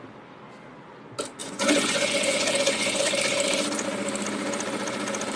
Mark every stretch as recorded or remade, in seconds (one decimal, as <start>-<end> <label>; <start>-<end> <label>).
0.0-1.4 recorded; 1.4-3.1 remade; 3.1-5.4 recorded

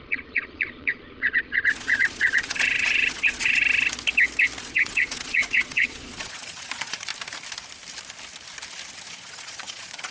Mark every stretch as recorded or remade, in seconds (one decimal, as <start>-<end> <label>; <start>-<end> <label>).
0.0-3.6 remade; 3.6-4.6 recorded; 4.6-7.1 remade; 7.1-9.1 recorded; 9.1-10.1 remade

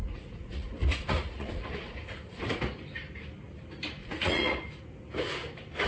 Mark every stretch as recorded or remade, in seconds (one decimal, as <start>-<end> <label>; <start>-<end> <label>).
0.0-2.6 remade; 2.6-4.0 recorded; 4.0-4.7 remade; 4.7-5.9 recorded

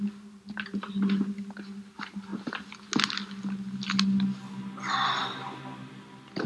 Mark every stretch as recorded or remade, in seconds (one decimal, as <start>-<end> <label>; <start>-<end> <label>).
0.0-6.5 recorded

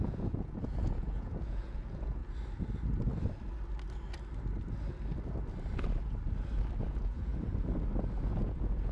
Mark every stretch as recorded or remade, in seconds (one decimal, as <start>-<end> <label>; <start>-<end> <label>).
0.0-2.2 remade; 2.2-6.8 recorded; 6.8-7.3 remade; 7.3-8.4 recorded; 8.4-8.9 remade